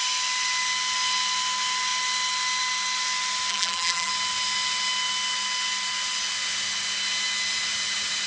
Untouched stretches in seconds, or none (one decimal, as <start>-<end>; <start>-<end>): 0.0-3.5; 4.1-8.3